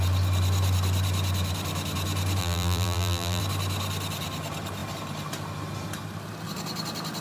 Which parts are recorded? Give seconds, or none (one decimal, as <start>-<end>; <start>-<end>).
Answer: 0.0-2.4; 3.4-7.2